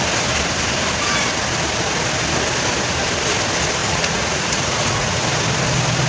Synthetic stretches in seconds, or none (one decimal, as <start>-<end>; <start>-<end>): 3.8-5.2